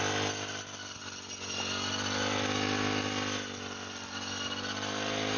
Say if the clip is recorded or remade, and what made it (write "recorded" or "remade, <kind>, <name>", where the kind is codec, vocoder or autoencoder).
recorded